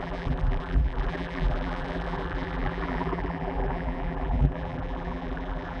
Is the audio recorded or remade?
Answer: remade